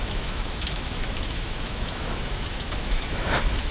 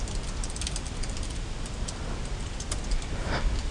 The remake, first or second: first